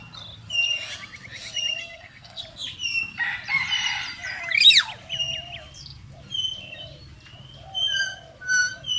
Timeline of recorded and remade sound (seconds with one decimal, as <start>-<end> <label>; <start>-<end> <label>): 0.0-1.8 recorded; 1.8-2.4 remade; 2.4-9.0 recorded